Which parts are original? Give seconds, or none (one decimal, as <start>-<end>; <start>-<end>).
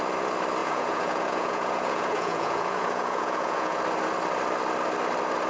0.0-0.6; 3.8-5.5